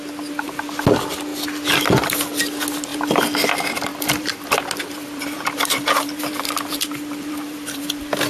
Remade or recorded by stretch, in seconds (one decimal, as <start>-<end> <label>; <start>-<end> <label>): 0.0-3.9 recorded; 3.9-8.3 remade